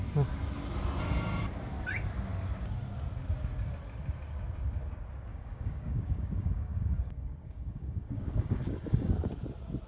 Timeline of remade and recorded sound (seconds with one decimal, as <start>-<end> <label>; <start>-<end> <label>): 0.0-5.3 recorded; 5.3-9.1 remade; 9.1-9.9 recorded

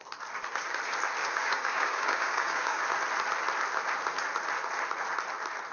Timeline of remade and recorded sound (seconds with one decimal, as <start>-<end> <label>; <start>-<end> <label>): 0.0-1.2 recorded; 1.2-2.8 remade; 2.8-5.7 recorded

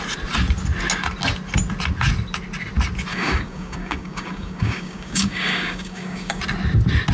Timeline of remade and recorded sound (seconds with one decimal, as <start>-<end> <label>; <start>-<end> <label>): 0.0-3.1 recorded; 3.1-6.4 remade; 6.4-7.1 recorded

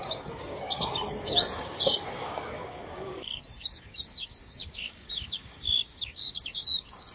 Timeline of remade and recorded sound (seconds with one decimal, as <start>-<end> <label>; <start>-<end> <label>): 0.0-7.1 remade

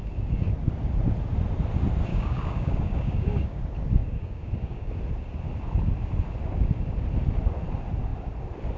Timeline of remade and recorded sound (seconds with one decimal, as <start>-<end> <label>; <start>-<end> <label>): 0.0-0.5 remade; 0.5-2.1 recorded; 2.1-3.6 remade; 3.6-4.0 recorded; 4.0-4.9 remade; 4.9-8.8 recorded

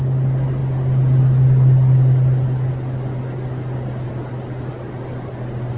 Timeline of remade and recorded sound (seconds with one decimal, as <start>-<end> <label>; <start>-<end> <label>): 0.0-5.8 recorded